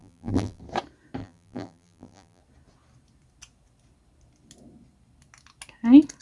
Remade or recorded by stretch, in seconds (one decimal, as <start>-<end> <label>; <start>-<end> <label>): 0.0-0.6 remade; 0.6-1.2 recorded; 1.2-2.4 remade; 2.4-6.2 recorded